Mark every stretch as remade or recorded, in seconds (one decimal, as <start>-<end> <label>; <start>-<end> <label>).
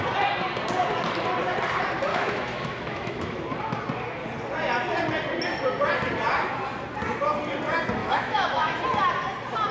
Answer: 0.0-2.1 recorded; 2.1-3.4 remade; 3.4-8.0 recorded; 8.0-8.7 remade; 8.7-9.7 recorded